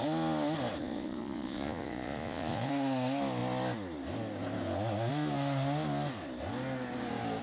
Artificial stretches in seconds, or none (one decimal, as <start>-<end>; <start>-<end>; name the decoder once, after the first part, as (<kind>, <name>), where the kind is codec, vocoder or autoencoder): 0.8-2.7 (vocoder, Vocos)